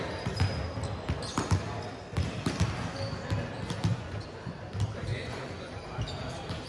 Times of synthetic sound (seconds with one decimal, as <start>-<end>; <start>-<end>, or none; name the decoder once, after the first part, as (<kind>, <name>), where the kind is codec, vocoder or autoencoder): 3.9-4.6 (vocoder, Vocos); 5.1-5.9